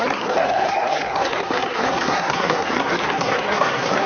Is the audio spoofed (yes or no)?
yes